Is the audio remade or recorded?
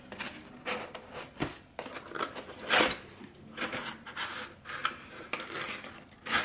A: recorded